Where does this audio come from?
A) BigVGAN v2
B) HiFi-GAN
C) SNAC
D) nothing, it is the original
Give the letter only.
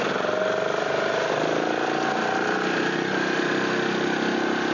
D